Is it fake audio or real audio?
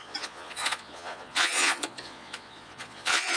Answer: fake